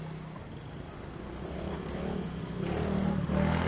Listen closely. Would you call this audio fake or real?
real